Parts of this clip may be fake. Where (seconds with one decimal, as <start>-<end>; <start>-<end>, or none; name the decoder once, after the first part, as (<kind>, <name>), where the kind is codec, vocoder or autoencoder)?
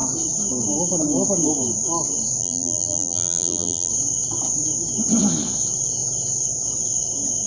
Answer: 2.4-3.9 (vocoder, BigVGAN v2)